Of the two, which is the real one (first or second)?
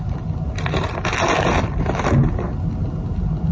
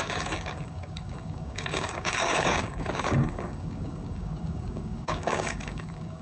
first